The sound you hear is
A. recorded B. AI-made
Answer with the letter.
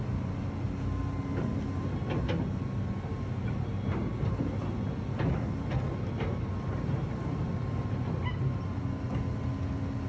A